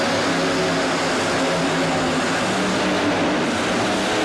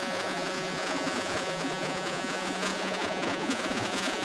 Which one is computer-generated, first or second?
second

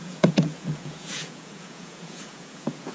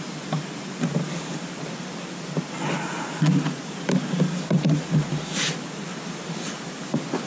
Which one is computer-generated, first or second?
first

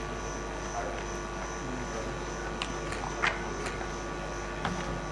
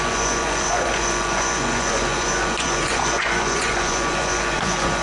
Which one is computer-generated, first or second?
second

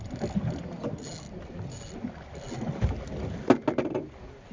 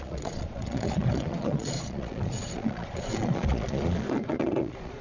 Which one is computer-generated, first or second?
second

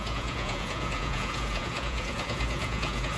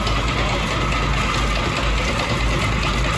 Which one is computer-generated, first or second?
first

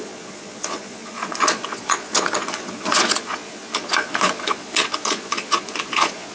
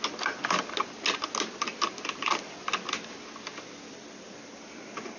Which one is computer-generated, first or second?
first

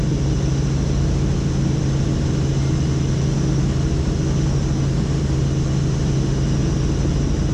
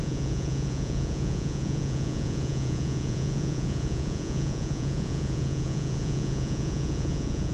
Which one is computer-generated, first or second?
second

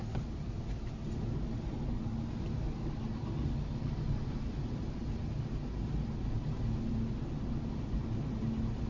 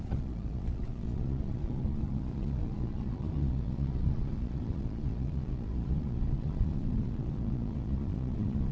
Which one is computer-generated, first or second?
second